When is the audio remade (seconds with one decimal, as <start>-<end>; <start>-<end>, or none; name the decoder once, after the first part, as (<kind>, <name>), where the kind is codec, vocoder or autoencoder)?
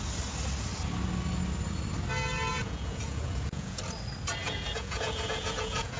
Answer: 2.5-3.8 (vocoder, Vocos); 4.4-6.0